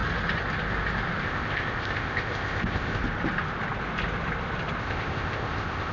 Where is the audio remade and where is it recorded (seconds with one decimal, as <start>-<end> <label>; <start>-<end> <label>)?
0.0-1.2 recorded; 1.2-3.0 remade; 3.0-4.8 recorded; 4.8-5.9 remade